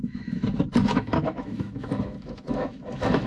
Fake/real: fake